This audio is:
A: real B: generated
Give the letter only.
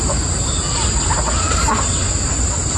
A